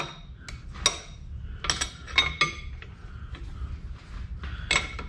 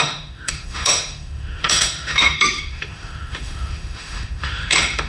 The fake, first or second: second